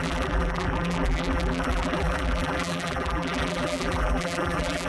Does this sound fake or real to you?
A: fake